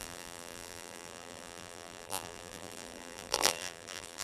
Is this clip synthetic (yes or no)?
yes